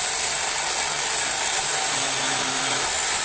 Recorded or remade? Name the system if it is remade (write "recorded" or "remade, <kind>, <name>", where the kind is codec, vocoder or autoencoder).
recorded